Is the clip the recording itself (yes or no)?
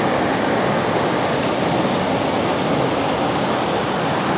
yes